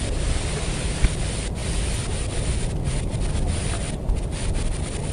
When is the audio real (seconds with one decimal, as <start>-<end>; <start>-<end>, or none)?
0.0-5.1